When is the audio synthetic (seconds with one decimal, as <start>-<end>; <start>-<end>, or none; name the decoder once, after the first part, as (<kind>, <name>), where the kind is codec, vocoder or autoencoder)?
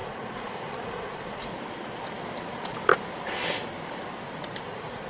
0.0-1.5 (vocoder, Vocos); 4.6-5.1